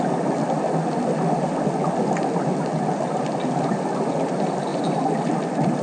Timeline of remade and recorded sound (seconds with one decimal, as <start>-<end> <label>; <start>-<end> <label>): 0.0-5.8 recorded